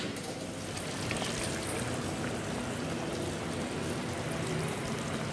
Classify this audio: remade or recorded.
recorded